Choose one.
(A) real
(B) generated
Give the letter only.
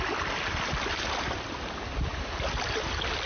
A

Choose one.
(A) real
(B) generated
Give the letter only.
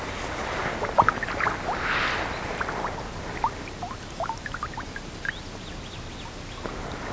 A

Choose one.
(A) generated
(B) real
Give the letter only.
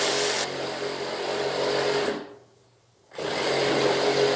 B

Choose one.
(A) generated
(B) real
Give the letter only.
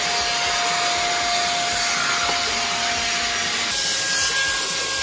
B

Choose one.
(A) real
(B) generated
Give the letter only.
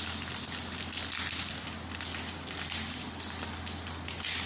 A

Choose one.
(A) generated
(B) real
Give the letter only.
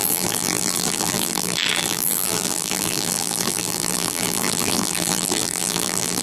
A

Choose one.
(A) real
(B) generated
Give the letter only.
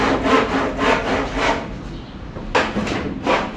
A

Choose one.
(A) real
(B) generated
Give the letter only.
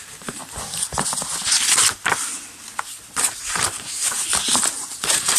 A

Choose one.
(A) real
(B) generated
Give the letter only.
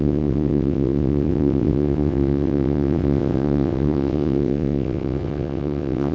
B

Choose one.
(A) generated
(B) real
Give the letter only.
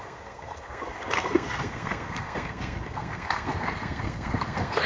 A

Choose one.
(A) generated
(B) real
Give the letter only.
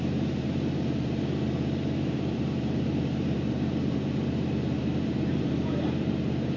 A